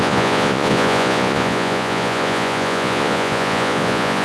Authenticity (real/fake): fake